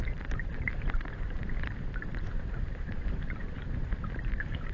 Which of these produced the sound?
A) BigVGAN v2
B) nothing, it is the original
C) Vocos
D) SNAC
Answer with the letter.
A